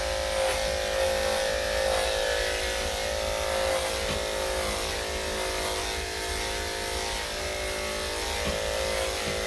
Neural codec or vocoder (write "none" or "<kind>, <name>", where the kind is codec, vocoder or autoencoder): none